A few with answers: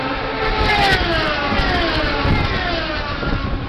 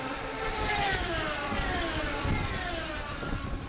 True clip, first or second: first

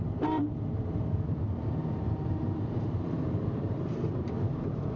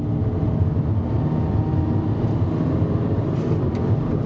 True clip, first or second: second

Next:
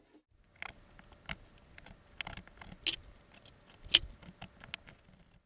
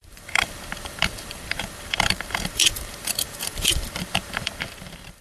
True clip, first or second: first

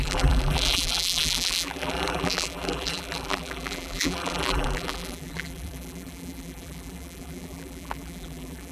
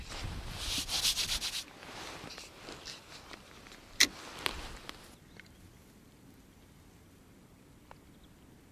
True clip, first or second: second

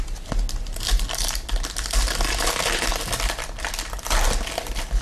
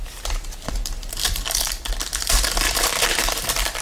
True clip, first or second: first